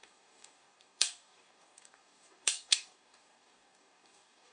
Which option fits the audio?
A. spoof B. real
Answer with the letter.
A